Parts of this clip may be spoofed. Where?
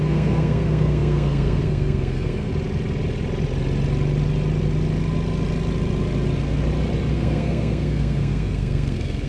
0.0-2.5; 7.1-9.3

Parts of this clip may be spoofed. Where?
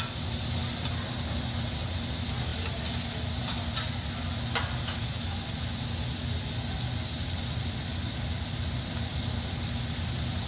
none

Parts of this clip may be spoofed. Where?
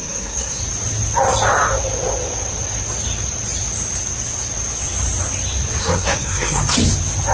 0.0-0.6; 5.8-6.6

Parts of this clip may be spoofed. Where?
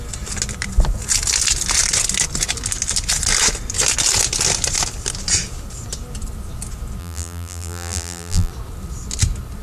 7.0-8.5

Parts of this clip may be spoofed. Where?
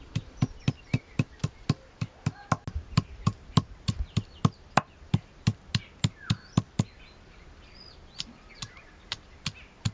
none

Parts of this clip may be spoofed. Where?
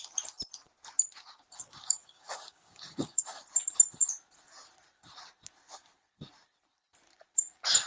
1.6-3.4